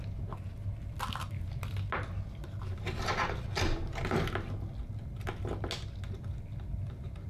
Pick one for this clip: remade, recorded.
recorded